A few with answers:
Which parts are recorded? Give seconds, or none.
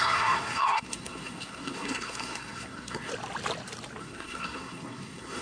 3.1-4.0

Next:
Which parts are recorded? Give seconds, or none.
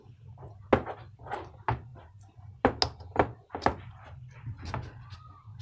0.0-5.6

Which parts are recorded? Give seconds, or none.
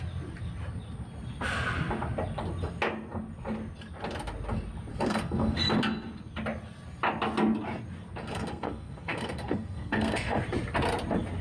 0.0-4.9; 5.7-8.2; 10.4-11.4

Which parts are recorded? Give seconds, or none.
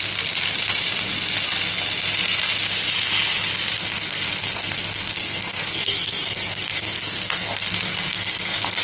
0.0-3.8